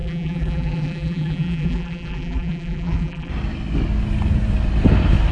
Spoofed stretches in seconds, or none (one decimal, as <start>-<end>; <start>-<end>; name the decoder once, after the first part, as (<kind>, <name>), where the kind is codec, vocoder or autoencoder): 0.0-3.3 (vocoder, BigVGAN v2)